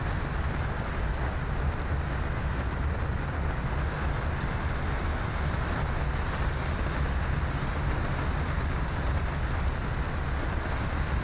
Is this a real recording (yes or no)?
yes